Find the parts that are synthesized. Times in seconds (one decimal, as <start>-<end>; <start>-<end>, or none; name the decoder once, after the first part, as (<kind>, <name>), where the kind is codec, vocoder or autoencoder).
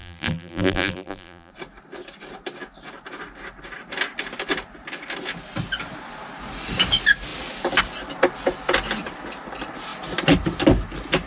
0.0-1.5 (vocoder, BigVGAN v2)